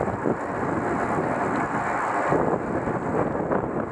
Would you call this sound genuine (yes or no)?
yes